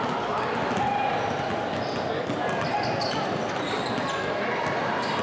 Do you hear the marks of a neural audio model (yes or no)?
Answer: no